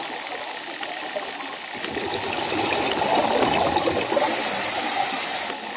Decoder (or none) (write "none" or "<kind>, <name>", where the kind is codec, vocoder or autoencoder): none